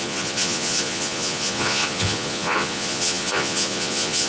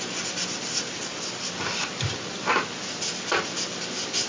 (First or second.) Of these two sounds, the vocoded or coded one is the first